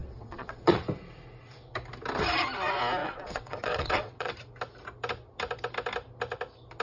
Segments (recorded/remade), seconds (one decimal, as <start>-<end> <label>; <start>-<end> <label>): 0.0-0.8 remade; 0.8-3.0 recorded; 3.0-4.3 remade; 4.3-6.8 recorded